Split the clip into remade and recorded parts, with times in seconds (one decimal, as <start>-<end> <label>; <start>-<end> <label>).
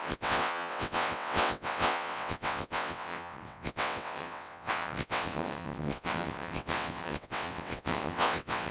0.0-8.7 remade